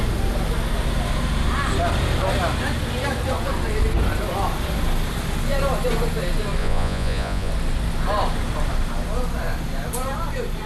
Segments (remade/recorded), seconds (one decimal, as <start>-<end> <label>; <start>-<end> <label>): 0.0-6.6 recorded; 6.6-7.5 remade; 7.5-10.7 recorded

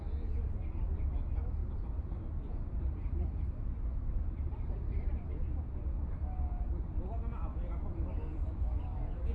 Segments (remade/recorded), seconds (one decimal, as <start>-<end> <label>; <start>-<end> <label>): 0.0-1.6 recorded; 1.6-5.7 remade; 5.7-7.5 recorded; 7.5-8.5 remade; 8.5-9.3 recorded